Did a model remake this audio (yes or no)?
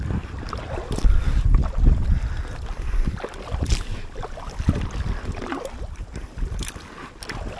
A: no